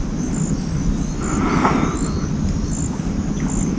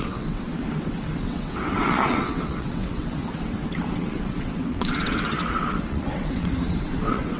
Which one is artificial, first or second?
second